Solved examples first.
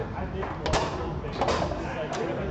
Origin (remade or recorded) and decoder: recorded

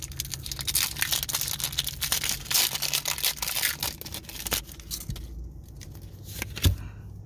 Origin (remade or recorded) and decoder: recorded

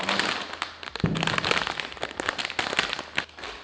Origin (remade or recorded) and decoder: recorded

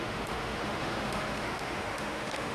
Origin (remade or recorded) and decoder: remade, autoencoder, DAC-VAE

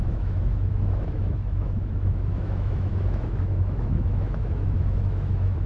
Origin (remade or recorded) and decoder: remade, autoencoder, DAC-VAE